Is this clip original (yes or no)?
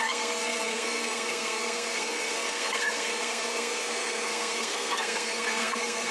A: no